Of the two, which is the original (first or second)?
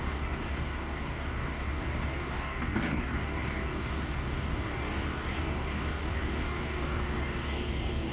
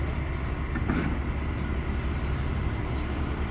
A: second